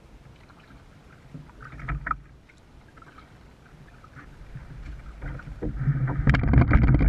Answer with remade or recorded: recorded